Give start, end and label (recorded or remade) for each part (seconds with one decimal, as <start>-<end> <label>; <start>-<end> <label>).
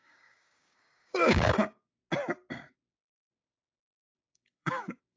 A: 0.0-2.0 remade; 2.0-2.7 recorded; 2.7-5.2 remade